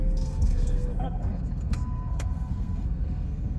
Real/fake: fake